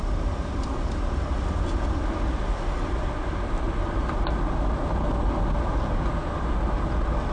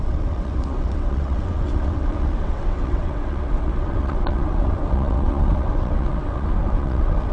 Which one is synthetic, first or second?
second